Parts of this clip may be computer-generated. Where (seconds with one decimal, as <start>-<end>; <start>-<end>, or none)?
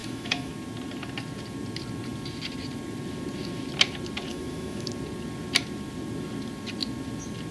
0.0-0.5; 4.3-4.9